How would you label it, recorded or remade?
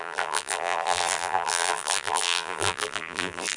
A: remade